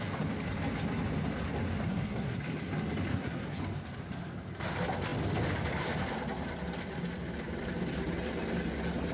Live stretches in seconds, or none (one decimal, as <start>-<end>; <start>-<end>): 0.0-1.9; 2.4-3.1; 3.6-9.1